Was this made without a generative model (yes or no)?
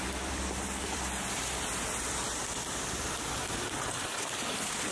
no